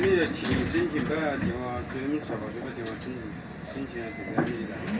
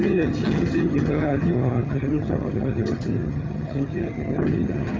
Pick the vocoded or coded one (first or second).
second